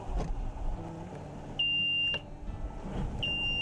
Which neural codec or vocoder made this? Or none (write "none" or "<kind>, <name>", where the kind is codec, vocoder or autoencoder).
none